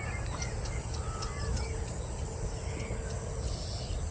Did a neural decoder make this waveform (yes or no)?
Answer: no